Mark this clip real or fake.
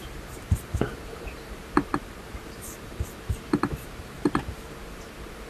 fake